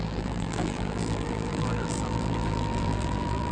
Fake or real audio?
fake